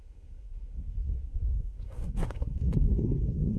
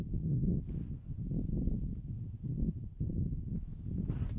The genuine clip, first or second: second